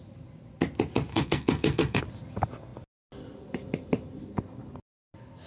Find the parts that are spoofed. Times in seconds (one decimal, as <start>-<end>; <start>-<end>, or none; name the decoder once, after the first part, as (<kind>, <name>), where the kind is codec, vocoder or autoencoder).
1.1-2.0 (codec, SNAC)